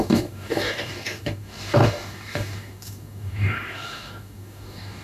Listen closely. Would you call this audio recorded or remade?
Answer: remade